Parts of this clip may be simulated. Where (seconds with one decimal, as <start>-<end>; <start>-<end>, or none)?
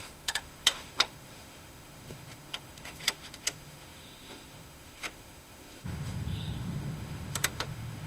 0.0-8.1